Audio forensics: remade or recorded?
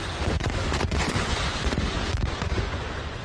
remade